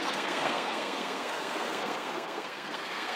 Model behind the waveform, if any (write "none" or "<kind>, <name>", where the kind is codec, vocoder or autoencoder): codec, SNAC